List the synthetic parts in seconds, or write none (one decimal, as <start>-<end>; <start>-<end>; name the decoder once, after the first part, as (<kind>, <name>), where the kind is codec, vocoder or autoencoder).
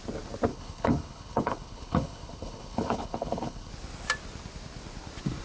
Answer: 0.5-3.7 (codec, HILCodec)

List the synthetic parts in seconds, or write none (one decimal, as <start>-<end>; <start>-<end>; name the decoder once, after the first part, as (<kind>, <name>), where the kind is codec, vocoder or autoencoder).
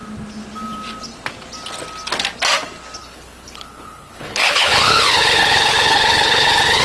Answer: 3.0-6.8 (codec, HILCodec)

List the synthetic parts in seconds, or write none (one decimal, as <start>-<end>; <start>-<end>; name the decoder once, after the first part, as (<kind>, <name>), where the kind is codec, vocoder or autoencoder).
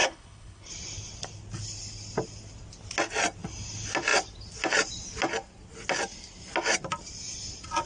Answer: 0.0-0.7 (codec, HILCodec)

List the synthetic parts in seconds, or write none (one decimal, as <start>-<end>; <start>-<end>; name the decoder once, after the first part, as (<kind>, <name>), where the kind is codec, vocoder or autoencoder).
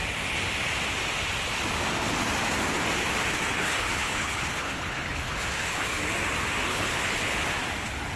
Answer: 3.5-6.0 (codec, HILCodec); 6.7-7.4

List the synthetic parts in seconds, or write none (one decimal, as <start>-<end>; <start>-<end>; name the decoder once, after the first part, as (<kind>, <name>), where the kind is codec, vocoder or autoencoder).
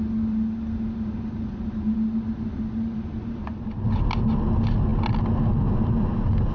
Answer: none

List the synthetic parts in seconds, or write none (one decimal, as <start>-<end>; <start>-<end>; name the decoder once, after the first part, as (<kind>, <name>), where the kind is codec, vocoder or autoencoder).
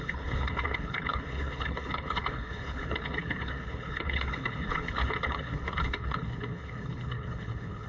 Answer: 0.0-7.9 (codec, HILCodec)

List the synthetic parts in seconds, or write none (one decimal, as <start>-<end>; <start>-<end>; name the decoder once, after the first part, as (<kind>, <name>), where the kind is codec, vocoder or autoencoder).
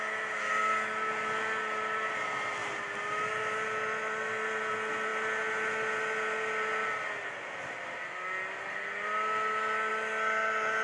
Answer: none